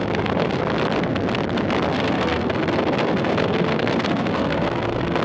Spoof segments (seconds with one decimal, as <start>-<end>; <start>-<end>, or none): 0.0-0.6; 1.9-5.2